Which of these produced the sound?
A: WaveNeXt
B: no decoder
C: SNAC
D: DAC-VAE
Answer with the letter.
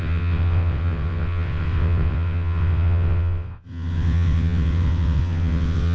A